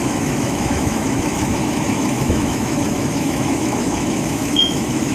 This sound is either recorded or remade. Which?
remade